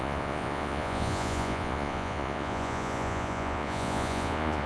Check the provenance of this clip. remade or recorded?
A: remade